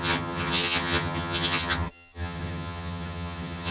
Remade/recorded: remade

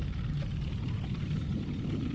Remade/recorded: recorded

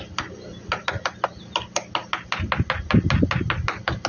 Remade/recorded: recorded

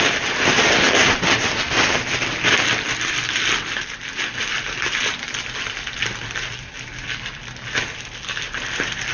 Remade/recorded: recorded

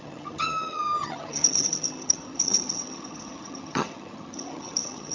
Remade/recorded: remade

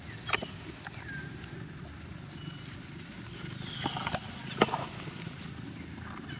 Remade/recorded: recorded